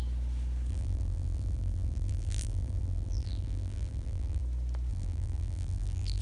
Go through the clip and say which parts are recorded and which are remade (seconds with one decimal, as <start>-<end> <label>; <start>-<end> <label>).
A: 0.0-0.7 recorded; 0.7-4.4 remade; 4.4-4.9 recorded; 4.9-6.2 remade